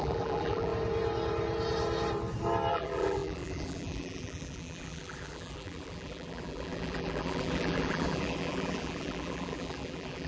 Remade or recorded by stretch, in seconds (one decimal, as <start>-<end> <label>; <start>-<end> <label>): 0.0-0.7 remade; 0.7-2.7 recorded; 2.7-10.3 remade